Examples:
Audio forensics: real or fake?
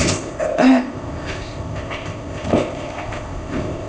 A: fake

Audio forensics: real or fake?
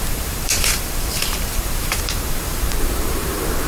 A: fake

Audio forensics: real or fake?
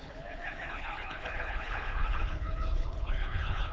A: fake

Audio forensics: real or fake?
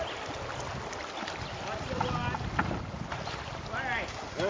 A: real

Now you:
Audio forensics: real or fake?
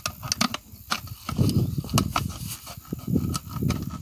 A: real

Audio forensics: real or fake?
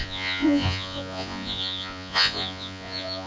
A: fake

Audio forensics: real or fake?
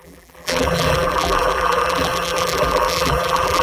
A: fake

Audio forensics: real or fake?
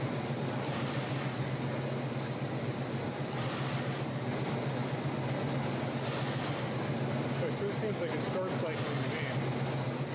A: real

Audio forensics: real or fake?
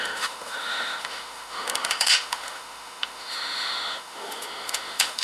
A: fake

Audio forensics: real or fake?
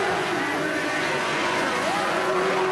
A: fake